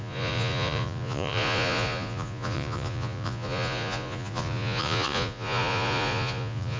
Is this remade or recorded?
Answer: remade